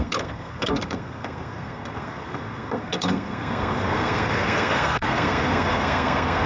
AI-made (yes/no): yes